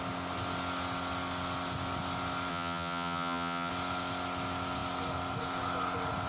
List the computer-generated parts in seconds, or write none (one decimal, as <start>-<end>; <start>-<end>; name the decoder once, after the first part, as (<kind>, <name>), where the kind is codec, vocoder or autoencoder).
2.5-3.7 (vocoder, HiFi-GAN)